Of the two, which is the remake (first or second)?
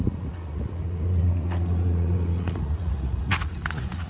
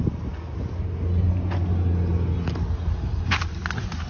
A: first